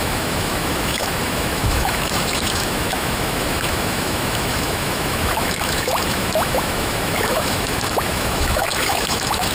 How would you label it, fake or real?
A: fake